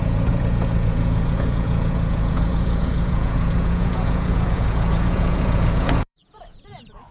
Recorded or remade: remade